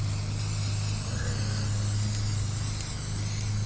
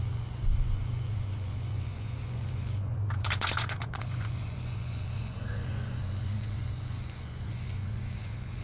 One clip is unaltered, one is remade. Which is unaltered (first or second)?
first